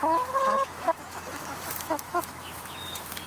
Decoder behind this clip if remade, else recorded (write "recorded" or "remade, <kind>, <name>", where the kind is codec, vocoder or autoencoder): remade, autoencoder, DAC-VAE